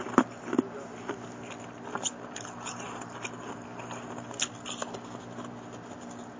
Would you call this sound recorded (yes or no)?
yes